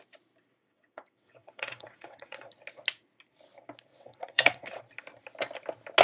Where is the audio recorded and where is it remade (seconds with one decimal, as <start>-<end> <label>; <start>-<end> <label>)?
0.0-0.6 recorded; 0.6-2.5 remade; 2.5-3.9 recorded; 3.9-4.8 remade; 4.8-6.0 recorded